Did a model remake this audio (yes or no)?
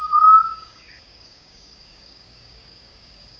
yes